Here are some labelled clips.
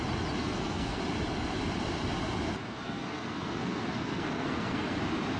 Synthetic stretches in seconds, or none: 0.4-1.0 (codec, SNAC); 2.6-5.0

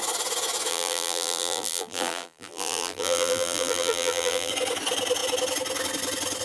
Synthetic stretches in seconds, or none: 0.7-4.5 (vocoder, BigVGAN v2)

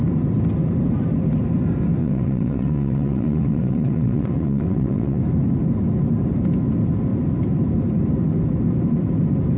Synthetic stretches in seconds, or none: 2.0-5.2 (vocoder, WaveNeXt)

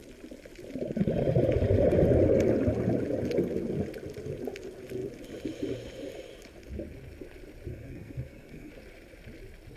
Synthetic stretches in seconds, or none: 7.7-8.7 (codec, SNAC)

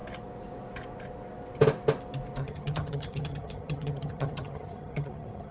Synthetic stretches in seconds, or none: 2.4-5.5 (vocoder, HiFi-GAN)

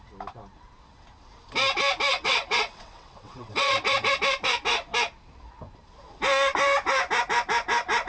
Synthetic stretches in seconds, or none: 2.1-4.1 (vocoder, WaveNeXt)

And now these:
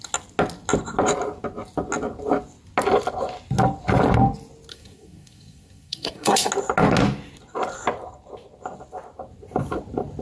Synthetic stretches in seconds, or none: 4.7-6.5 (codec, SNAC)